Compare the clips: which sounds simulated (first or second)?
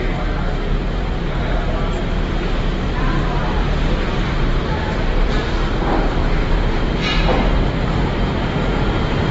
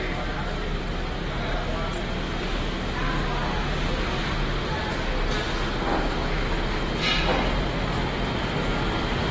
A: first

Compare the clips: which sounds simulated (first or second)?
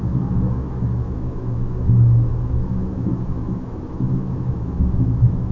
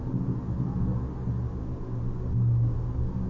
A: first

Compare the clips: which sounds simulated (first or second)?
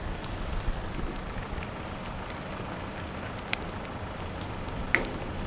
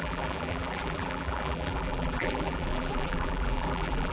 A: second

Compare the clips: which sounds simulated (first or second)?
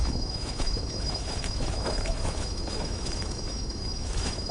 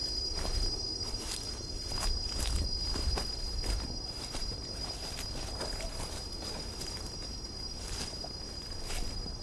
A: first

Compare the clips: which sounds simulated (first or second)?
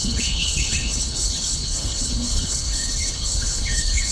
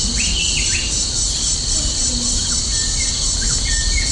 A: first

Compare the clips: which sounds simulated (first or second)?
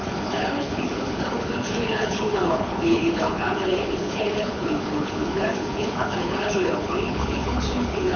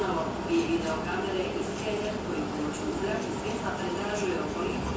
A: first